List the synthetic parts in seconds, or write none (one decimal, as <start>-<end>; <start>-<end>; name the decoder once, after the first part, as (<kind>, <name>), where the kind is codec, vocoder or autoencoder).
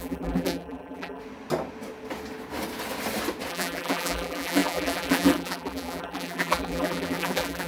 0.0-1.2 (vocoder, BigVGAN v2); 3.5-7.7